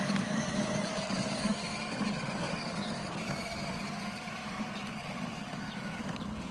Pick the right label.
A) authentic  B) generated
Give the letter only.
B